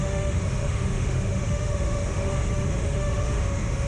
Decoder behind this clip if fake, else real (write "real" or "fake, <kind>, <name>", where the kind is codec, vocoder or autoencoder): fake, autoencoder, DAC-VAE